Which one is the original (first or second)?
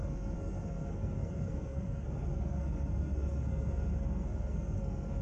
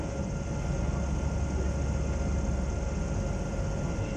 second